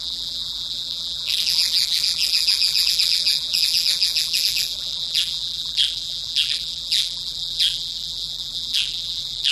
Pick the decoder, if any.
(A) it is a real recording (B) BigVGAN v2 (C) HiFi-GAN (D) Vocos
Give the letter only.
B